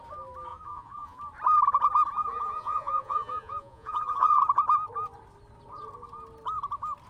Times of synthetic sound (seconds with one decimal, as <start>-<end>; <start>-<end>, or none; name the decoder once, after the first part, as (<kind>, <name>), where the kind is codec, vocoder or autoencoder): 0.5-1.2 (vocoder, Vocos); 2.2-4.4